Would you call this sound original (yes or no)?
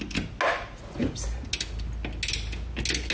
yes